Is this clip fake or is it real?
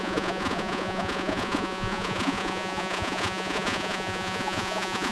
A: fake